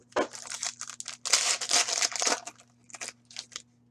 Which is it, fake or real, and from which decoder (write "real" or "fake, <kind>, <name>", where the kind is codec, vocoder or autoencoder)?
real